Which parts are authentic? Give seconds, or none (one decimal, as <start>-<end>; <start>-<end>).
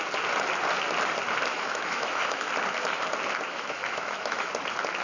0.0-1.5; 2.5-3.5; 4.5-5.0